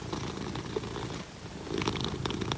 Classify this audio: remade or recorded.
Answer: recorded